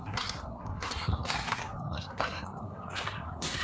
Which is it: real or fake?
fake